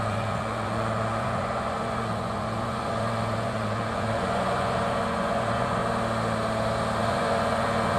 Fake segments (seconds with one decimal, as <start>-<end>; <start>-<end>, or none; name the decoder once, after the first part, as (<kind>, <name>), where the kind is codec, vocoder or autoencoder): 0.0-5.8 (vocoder, Vocos); 7.0-8.0